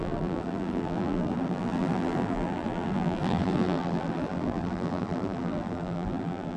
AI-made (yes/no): yes